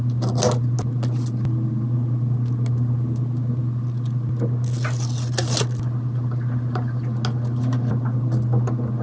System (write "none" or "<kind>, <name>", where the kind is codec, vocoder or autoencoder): none